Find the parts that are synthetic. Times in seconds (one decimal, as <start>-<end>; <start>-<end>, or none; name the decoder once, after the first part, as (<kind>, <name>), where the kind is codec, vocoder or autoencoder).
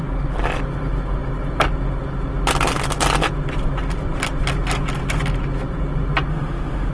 6.3-6.9 (autoencoder, DAC-VAE)